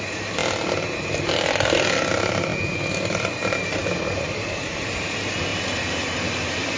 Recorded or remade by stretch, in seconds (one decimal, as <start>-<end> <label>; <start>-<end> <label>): 0.0-0.4 remade; 0.4-2.1 recorded; 2.1-2.5 remade; 2.5-3.0 recorded; 3.0-6.8 remade